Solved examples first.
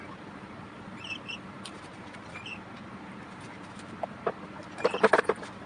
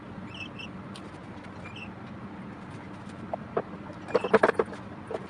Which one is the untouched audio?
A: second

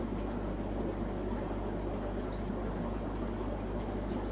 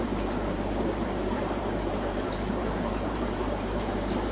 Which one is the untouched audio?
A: first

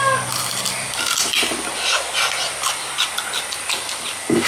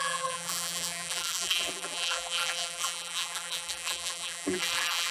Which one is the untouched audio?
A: first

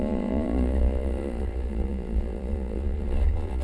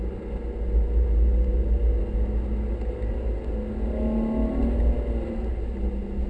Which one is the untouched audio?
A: second